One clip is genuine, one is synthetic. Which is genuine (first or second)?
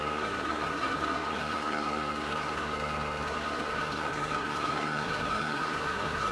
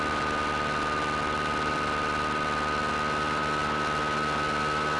second